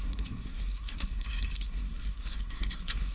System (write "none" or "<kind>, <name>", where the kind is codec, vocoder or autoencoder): codec, SNAC